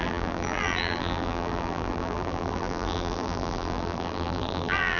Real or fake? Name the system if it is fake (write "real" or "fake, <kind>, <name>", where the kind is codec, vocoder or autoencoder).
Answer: fake, vocoder, BigVGAN v2